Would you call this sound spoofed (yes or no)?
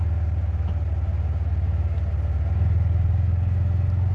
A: no